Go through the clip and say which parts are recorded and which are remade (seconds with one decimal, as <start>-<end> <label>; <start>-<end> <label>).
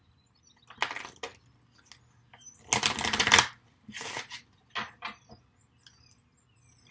0.0-6.9 recorded